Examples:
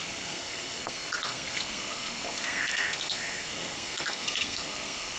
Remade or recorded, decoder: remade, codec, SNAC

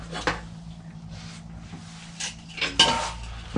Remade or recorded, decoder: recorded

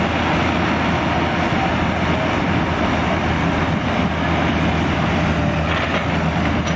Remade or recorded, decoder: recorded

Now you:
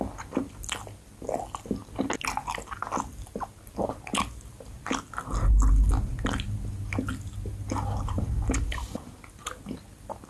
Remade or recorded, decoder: recorded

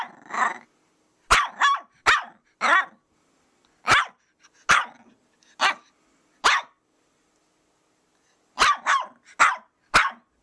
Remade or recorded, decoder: recorded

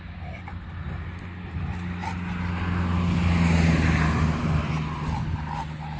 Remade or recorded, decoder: recorded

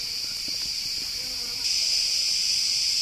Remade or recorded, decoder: remade, vocoder, BigVGAN v2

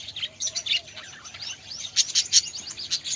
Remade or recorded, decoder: recorded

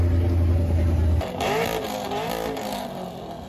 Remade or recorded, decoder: recorded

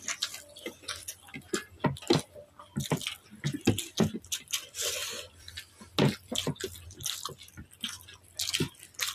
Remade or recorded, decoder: recorded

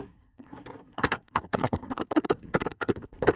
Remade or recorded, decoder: remade, codec, SNAC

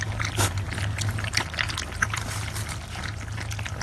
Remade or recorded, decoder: recorded